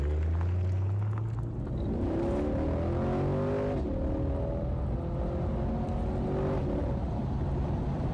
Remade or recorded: recorded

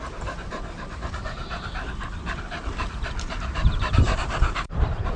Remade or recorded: remade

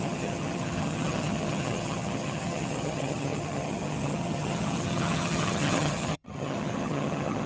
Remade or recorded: remade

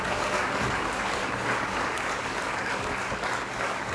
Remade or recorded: remade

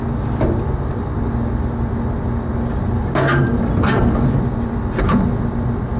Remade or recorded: recorded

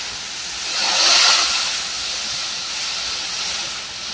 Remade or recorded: recorded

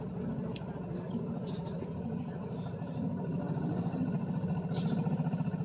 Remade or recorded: recorded